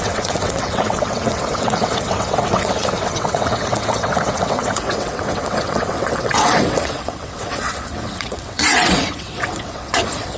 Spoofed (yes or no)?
yes